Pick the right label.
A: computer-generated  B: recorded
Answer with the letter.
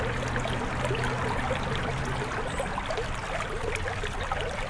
B